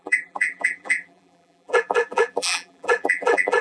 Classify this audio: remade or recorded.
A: remade